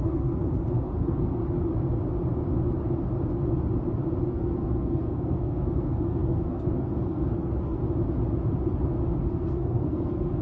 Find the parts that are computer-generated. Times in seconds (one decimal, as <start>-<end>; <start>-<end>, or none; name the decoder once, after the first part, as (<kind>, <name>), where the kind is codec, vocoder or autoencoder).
0.0-1.4 (codec, SNAC); 4.3-7.8; 9.2-10.4